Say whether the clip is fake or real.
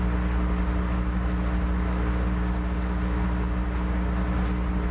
real